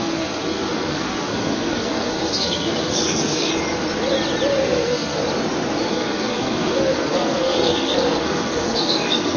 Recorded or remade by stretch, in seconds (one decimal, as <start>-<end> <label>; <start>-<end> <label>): 0.0-3.5 remade; 3.5-4.6 recorded; 4.6-5.2 remade; 5.2-5.9 recorded; 5.9-9.4 remade

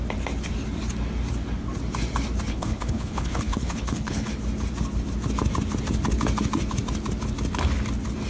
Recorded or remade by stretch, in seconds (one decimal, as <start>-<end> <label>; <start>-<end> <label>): 0.0-2.5 recorded; 2.5-4.3 remade; 4.3-8.3 recorded

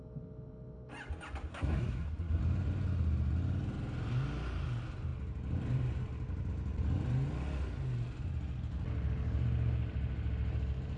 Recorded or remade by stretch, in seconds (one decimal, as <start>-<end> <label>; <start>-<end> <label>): 0.0-1.5 recorded; 1.5-2.4 remade; 2.4-11.0 recorded

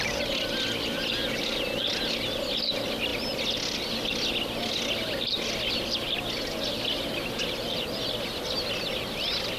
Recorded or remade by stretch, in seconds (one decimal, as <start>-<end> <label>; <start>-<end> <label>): 0.0-9.6 recorded